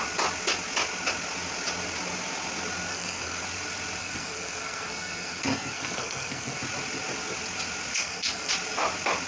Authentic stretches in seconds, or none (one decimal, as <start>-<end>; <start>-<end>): 0.0-2.9; 3.4-4.0; 6.6-7.9; 8.5-9.3